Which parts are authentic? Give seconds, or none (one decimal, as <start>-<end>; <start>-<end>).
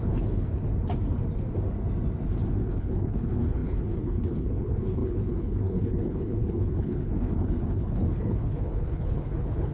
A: 0.7-2.7